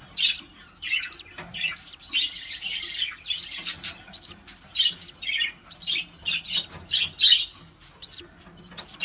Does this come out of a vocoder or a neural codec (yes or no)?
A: no